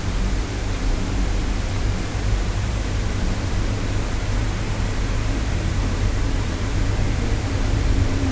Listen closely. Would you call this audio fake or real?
fake